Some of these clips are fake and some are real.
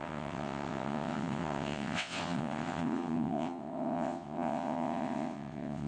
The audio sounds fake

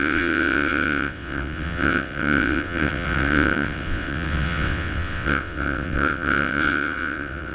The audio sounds fake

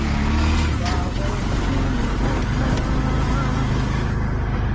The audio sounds real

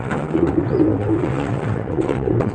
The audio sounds fake